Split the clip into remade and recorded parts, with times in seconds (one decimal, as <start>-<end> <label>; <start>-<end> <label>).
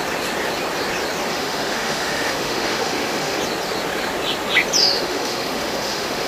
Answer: 0.0-1.3 recorded; 1.3-3.4 remade; 3.4-4.8 recorded; 4.8-6.3 remade